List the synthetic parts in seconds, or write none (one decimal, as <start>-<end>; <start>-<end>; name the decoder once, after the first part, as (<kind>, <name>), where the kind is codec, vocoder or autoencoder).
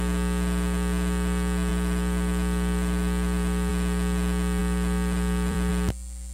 1.7-3.7 (vocoder, BigVGAN v2); 4.6-5.7